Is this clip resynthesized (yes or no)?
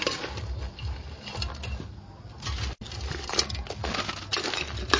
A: no